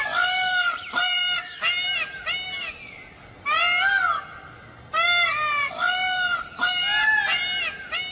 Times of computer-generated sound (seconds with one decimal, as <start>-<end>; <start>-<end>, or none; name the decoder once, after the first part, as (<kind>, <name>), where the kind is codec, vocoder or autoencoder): none